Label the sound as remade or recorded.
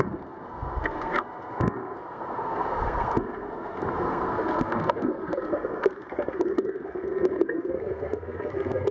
remade